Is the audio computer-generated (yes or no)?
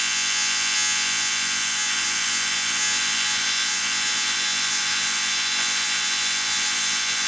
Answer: yes